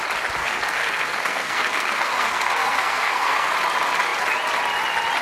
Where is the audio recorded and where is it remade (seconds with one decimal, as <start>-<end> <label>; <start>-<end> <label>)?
0.0-0.4 recorded; 0.4-3.5 remade; 3.5-5.2 recorded